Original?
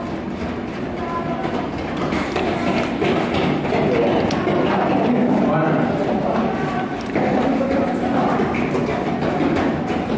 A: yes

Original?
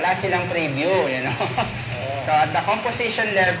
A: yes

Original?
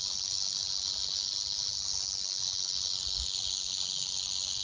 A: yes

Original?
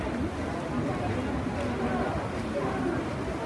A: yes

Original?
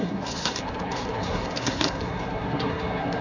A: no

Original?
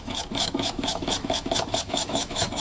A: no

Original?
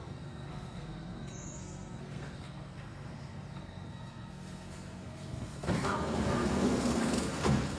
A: no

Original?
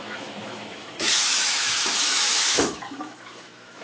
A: no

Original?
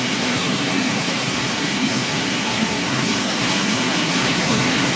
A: no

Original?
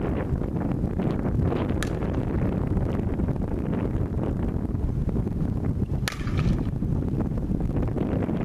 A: yes